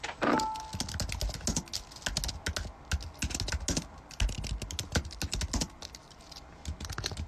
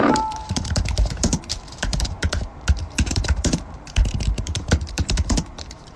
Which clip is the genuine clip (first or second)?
first